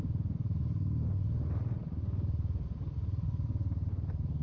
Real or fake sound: real